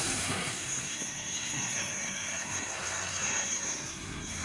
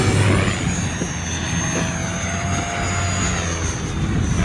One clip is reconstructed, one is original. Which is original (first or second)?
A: second